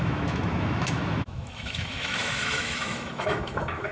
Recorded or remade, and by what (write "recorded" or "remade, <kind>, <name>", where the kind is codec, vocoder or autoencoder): remade, autoencoder, DAC-VAE